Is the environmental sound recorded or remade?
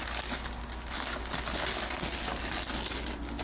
recorded